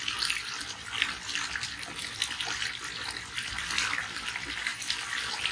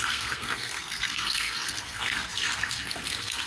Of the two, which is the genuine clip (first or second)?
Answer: first